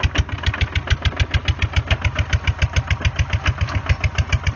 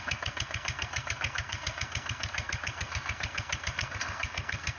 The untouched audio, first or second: first